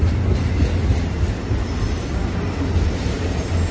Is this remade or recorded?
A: recorded